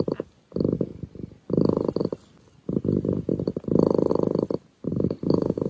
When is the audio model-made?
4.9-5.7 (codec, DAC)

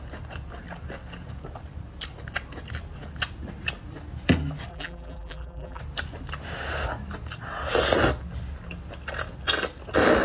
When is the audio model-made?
4.7-5.8 (vocoder, BigVGAN v2)

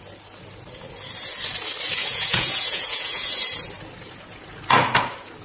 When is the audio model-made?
2.0-3.4 (vocoder, Vocos)